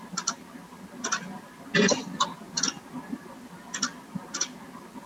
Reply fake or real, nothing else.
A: real